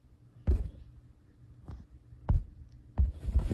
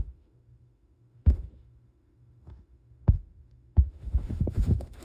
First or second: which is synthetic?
second